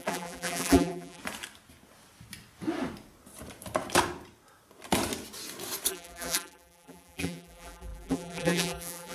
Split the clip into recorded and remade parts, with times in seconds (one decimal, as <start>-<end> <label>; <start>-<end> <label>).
0.0-1.2 remade; 1.2-5.9 recorded; 5.9-9.1 remade